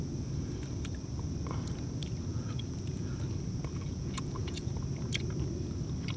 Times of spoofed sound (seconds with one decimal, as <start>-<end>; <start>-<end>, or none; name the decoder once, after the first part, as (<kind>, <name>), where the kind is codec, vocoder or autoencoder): 2.3-3.1 (vocoder, Vocos); 3.7-4.7